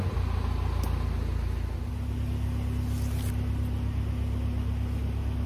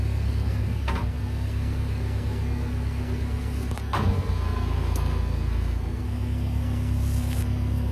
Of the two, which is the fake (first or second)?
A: second